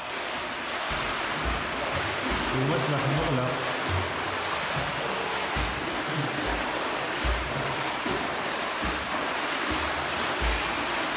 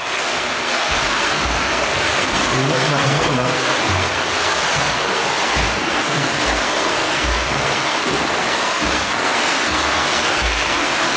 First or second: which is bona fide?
first